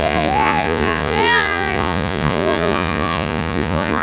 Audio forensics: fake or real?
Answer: fake